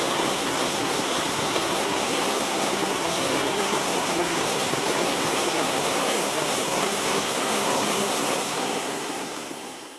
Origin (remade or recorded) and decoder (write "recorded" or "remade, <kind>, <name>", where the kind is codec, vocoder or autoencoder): remade, codec, SNAC